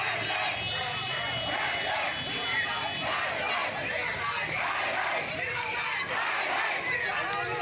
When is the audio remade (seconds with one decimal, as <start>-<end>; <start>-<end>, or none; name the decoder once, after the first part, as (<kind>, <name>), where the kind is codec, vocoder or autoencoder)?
none